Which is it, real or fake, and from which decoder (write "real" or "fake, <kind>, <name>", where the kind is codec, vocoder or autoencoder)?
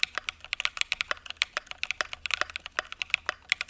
real